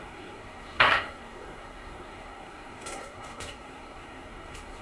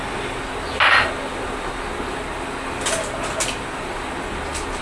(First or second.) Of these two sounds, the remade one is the first